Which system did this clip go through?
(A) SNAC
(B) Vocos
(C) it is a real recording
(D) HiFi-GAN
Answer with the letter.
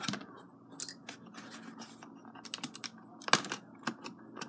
C